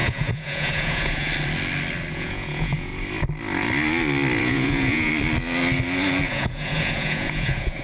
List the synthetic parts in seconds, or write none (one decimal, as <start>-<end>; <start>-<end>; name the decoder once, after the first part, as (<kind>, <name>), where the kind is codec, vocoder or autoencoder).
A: 0.0-1.3 (vocoder, Vocos); 2.1-2.9; 4.4-5.1; 6.3-7.8